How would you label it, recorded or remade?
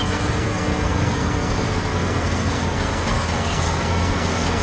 remade